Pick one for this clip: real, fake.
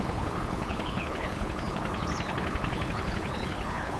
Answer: fake